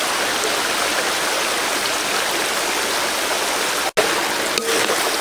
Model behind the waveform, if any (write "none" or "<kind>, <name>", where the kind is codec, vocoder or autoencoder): none